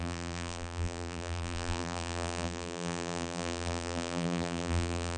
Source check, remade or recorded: remade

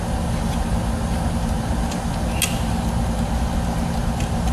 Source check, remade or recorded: recorded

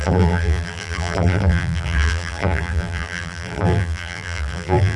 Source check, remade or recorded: remade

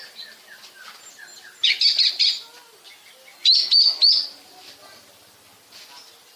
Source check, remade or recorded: recorded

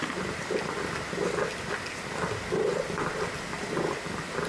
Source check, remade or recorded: recorded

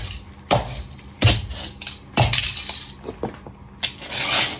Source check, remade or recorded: recorded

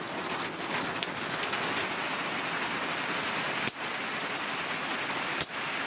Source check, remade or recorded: recorded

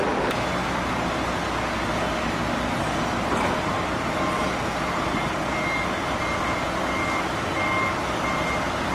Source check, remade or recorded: recorded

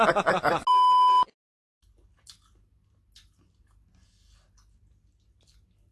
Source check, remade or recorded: recorded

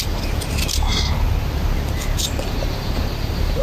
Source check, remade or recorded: recorded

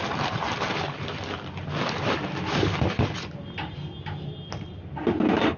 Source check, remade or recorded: recorded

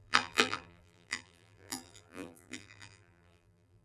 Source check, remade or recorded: remade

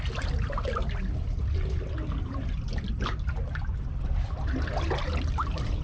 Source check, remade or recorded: recorded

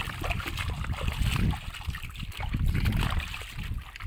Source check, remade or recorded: recorded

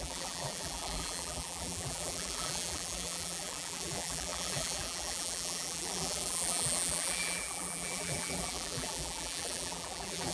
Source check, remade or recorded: remade